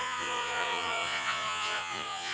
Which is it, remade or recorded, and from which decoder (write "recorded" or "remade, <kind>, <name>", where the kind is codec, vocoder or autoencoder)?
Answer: remade, vocoder, Vocos